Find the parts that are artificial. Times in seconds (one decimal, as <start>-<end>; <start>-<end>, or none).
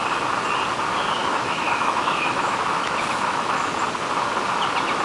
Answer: 1.2-3.6